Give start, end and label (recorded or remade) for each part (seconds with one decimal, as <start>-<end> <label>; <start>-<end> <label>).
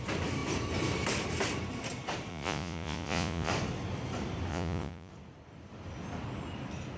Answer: 0.0-2.3 recorded; 2.3-3.5 remade; 3.5-4.5 recorded; 4.5-5.1 remade; 5.1-7.0 recorded